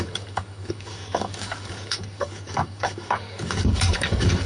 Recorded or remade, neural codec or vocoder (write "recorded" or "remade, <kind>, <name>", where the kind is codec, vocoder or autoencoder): remade, codec, DAC